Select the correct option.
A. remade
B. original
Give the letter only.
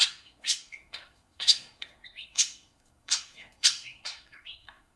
A